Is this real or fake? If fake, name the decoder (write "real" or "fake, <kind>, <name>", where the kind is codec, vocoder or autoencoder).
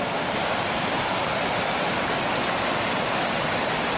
real